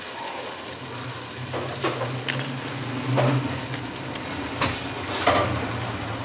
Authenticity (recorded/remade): recorded